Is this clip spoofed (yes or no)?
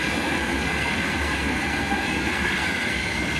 yes